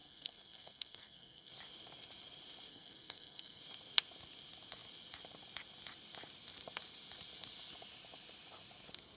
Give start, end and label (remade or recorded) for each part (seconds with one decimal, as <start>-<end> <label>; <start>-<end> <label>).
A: 0.0-1.5 remade; 1.5-2.7 recorded; 2.7-3.6 remade; 3.6-9.2 recorded